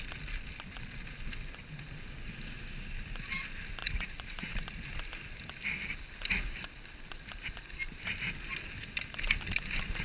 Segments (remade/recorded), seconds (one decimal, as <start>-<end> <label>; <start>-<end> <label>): 0.0-3.8 recorded; 3.8-4.5 remade; 4.5-10.0 recorded